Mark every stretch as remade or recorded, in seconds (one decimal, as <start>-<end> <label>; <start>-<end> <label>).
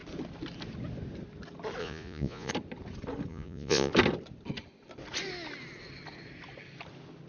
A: 0.0-1.8 recorded; 1.8-2.5 remade; 2.5-3.3 recorded; 3.3-3.9 remade; 3.9-7.3 recorded